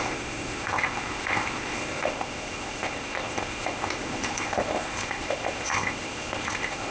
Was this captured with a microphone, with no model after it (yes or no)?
no